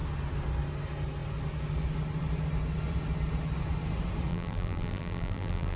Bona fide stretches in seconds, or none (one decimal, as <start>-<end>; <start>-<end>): 0.0-4.3